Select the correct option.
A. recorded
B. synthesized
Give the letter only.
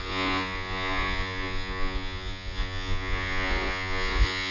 B